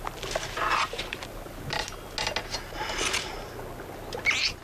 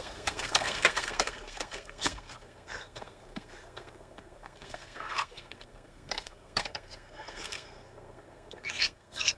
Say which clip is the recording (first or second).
first